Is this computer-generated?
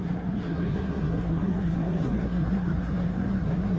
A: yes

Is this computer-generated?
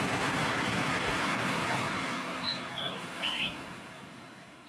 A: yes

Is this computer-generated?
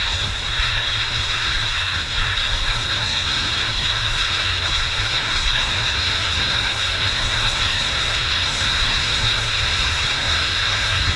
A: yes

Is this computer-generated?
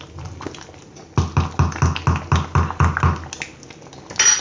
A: no